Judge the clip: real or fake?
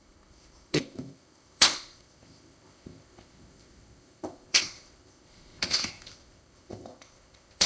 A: fake